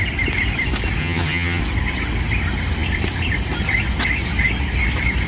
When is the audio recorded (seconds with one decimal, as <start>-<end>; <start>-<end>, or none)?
0.0-1.0; 1.6-5.3